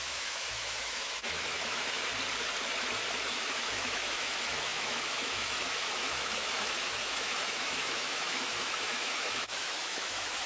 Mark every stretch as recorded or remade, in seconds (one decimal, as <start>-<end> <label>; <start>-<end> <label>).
0.0-2.1 remade; 2.1-3.3 recorded; 3.3-10.5 remade